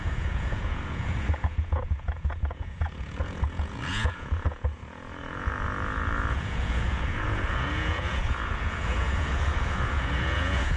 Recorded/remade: remade